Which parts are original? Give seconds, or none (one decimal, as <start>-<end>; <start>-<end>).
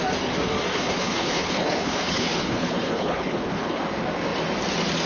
0.0-0.7; 3.8-5.1